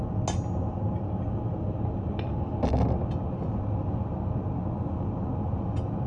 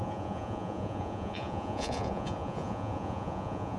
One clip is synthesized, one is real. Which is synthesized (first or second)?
second